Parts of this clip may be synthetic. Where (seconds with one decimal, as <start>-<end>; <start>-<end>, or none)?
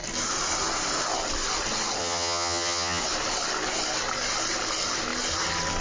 2.0-3.0